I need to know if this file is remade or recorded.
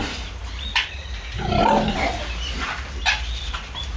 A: recorded